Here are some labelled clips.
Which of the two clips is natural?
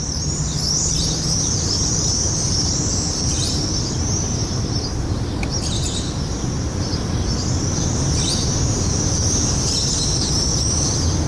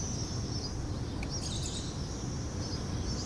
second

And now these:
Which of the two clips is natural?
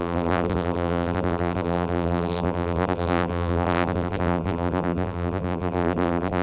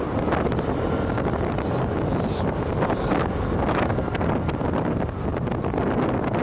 second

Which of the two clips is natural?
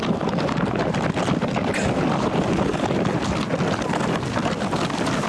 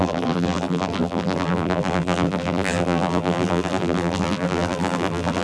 first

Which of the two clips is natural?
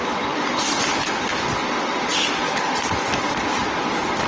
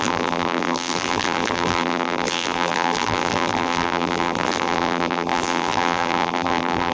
first